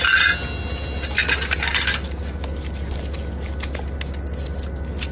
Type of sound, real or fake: real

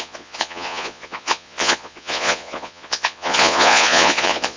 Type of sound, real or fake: fake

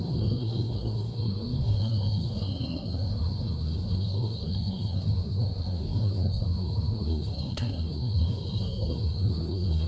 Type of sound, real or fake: fake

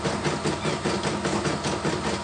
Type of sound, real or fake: real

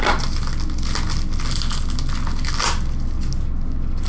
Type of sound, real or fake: real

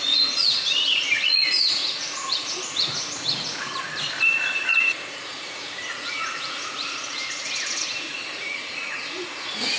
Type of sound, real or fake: fake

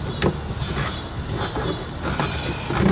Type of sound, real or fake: real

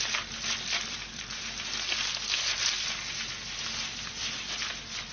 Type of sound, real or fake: real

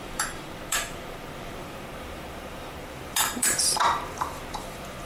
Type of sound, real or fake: fake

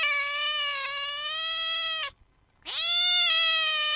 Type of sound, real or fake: real